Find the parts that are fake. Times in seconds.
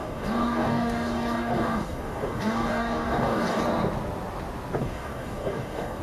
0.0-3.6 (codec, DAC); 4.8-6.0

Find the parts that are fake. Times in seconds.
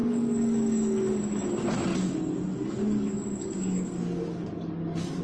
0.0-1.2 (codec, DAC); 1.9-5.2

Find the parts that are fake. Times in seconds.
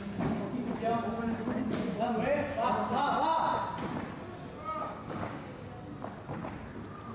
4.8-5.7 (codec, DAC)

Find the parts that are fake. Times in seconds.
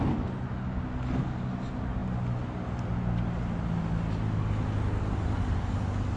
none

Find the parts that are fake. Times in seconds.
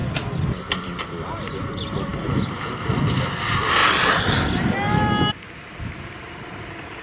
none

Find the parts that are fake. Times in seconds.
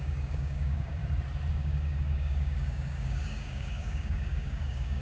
0.0-1.0 (codec, DAC); 1.5-5.0